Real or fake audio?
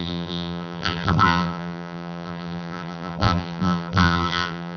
fake